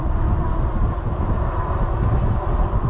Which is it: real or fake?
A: real